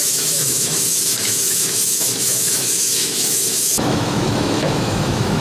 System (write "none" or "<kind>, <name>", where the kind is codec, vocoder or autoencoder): autoencoder, DAC-VAE